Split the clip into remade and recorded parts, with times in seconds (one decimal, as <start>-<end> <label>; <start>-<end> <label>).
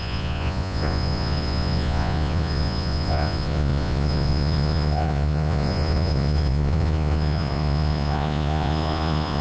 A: 0.0-9.4 remade